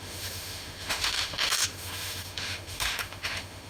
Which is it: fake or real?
fake